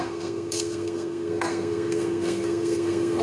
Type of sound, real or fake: fake